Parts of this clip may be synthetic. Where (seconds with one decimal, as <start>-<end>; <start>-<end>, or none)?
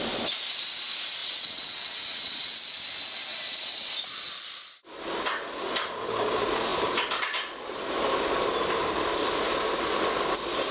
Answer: 1.2-2.6; 3.3-3.9